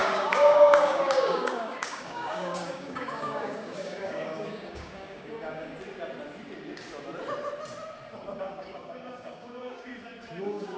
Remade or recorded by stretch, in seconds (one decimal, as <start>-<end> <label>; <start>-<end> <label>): 0.0-5.7 remade; 5.7-8.4 recorded; 8.4-9.9 remade; 9.9-10.4 recorded; 10.4-10.8 remade